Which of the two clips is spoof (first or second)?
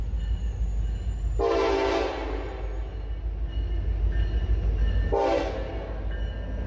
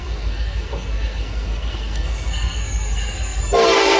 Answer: second